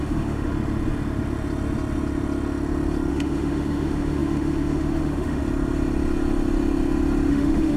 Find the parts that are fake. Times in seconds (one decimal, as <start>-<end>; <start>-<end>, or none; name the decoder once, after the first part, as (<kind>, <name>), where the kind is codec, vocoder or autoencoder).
0.0-0.5 (autoencoder, DAC-VAE); 3.1-5.4; 7.3-7.8